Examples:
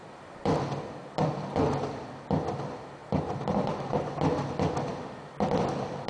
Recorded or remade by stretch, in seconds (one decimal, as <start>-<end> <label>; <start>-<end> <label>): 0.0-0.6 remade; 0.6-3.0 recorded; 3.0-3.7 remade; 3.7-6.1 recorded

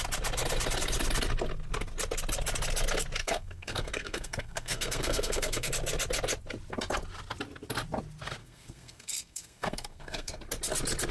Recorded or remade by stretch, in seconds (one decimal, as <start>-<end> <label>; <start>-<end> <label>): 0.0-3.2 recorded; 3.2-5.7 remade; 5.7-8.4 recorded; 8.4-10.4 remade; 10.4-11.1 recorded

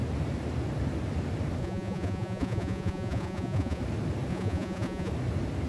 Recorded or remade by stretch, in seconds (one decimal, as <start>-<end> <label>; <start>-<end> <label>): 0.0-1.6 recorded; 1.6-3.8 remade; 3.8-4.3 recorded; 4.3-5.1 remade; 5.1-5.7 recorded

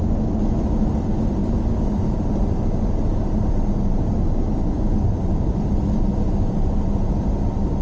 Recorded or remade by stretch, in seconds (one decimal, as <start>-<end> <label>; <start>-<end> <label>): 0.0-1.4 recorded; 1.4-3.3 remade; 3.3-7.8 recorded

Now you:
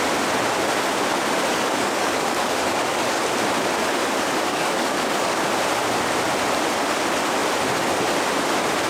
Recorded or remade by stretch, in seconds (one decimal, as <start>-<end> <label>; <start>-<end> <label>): 0.0-1.5 recorded; 1.5-3.2 remade; 3.2-4.5 recorded; 4.5-5.5 remade; 5.5-8.9 recorded

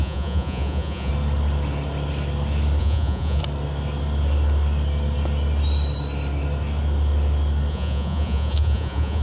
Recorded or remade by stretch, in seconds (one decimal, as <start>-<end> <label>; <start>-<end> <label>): 0.0-1.1 remade; 1.1-2.8 recorded; 2.8-3.4 remade; 3.4-7.7 recorded; 7.7-9.2 remade